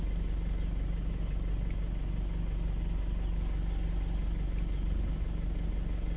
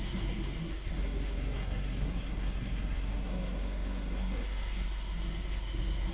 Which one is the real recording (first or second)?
first